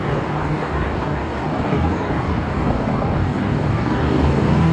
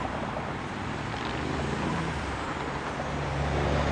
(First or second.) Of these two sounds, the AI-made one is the first